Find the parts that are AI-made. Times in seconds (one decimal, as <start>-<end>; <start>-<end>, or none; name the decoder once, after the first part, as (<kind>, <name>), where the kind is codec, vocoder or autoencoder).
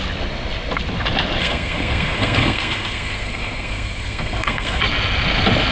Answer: 1.4-4.8 (codec, SNAC)